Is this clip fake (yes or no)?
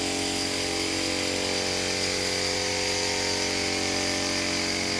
no